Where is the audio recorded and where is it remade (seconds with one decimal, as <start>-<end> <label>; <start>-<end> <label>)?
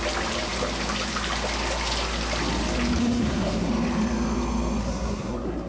0.0-3.0 recorded; 3.0-3.7 remade; 3.7-4.8 recorded; 4.8-5.7 remade